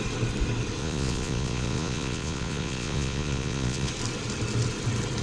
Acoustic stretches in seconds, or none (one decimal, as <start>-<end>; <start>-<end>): 0.0-0.8; 3.9-5.2